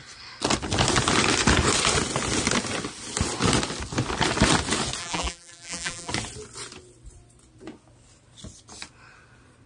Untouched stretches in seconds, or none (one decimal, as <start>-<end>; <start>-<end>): 0.0-5.0; 6.1-9.7

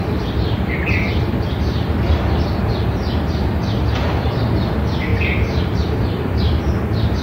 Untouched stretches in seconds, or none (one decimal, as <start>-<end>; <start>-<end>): 0.0-5.1; 6.6-7.2

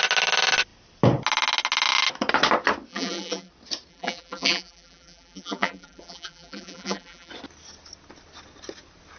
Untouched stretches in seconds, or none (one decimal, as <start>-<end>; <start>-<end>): 0.0-2.9; 3.5-3.9; 7.3-9.2

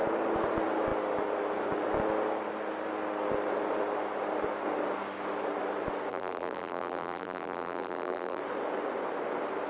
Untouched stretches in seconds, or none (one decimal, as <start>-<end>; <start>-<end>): 0.0-6.1; 8.4-9.7

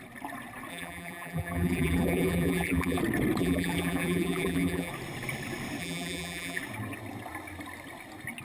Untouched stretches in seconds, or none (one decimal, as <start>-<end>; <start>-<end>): 0.0-0.7; 3.0-3.4; 4.9-5.8; 6.6-8.4

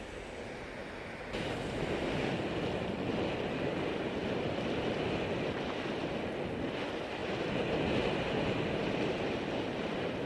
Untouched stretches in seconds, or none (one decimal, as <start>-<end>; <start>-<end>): 0.0-7.2

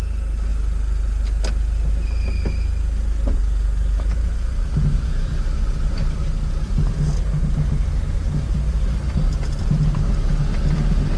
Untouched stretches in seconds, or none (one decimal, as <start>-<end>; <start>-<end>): 0.0-11.2

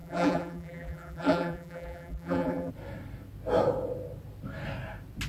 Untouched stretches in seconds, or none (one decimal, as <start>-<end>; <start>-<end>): 2.7-5.3